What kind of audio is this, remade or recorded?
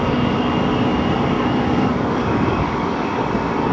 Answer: remade